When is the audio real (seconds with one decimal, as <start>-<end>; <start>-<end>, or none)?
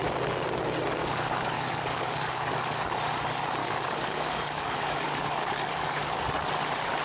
0.0-1.0; 2.8-3.6; 6.2-7.0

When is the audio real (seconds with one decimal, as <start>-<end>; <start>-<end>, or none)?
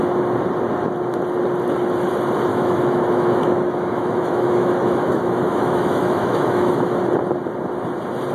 0.0-2.5; 7.0-8.3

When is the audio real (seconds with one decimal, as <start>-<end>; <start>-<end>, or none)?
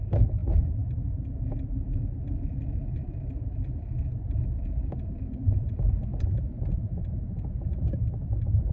0.0-0.4; 4.2-5.4; 6.9-8.7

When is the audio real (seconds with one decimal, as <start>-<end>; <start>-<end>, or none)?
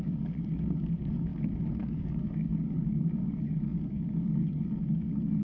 1.3-1.8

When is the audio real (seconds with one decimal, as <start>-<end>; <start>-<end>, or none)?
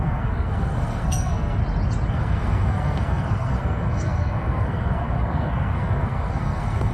1.6-2.1